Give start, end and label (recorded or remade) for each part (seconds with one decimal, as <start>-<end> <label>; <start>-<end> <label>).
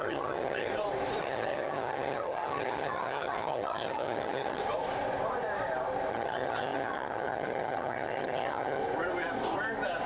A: 0.0-0.7 remade; 0.7-1.2 recorded; 1.2-4.6 remade; 4.6-6.1 recorded; 6.1-8.8 remade; 8.8-10.1 recorded